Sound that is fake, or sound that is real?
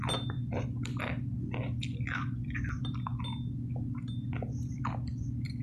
real